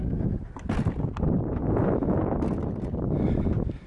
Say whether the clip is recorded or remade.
recorded